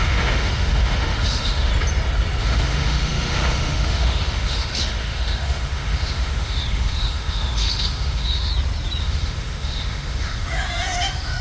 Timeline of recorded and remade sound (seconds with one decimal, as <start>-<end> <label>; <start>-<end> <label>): 0.0-1.7 remade; 1.7-2.4 recorded; 2.4-8.5 remade; 8.5-9.0 recorded; 9.0-11.4 remade